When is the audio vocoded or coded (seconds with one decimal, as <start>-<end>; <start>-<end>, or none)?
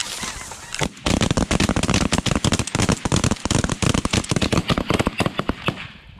none